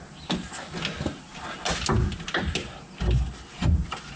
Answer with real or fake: real